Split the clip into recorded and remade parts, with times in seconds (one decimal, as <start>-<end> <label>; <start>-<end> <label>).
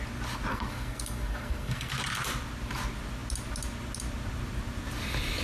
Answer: 0.0-0.5 recorded; 0.5-1.9 remade; 1.9-5.4 recorded